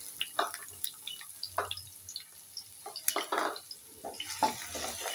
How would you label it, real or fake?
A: real